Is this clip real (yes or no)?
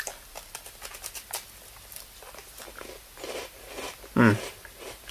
yes